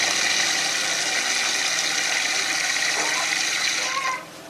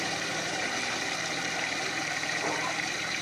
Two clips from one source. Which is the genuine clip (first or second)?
first